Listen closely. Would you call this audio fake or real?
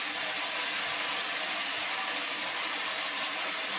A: real